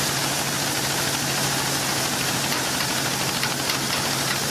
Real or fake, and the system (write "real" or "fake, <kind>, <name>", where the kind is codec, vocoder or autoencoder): real